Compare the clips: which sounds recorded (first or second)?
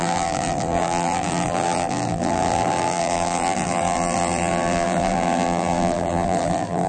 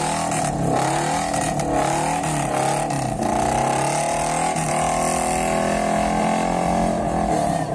second